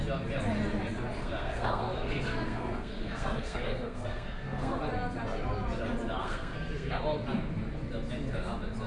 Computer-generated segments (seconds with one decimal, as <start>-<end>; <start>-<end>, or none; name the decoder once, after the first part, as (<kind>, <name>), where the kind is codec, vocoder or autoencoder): 1.2-4.8 (codec, SNAC); 6.2-7.0

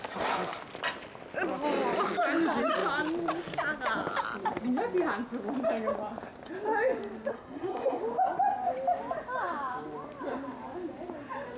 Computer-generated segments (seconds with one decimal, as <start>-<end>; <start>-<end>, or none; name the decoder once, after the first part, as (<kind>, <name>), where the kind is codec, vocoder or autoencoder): 7.3-8.0 (codec, SNAC)

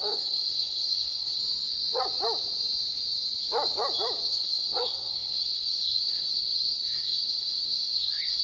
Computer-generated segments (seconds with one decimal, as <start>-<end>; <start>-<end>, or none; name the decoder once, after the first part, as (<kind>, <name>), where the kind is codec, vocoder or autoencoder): 0.0-1.4 (codec, SNAC); 4.3-8.4